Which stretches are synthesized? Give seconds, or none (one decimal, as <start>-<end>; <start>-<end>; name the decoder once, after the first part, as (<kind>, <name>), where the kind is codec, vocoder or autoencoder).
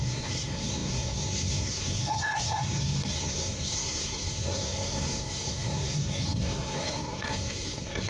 0.0-8.1 (codec, SNAC)